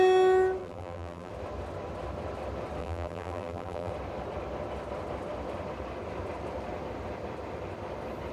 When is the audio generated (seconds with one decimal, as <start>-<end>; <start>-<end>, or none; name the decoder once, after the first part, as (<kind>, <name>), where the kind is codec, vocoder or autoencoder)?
0.6-1.3 (vocoder, BigVGAN v2); 2.8-3.9